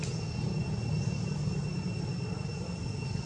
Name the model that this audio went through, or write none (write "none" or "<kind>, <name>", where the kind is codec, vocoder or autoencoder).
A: none